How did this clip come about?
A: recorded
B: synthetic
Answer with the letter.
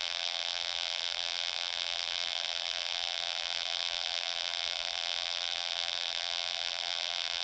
B